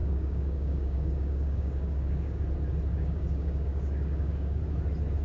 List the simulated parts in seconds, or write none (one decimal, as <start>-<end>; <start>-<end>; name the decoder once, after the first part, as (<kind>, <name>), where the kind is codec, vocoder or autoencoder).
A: 0.0-2.4 (codec, DAC); 2.9-4.6